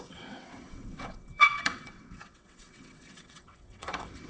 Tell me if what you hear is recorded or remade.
remade